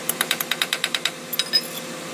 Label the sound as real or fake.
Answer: real